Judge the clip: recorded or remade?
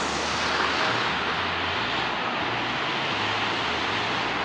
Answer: recorded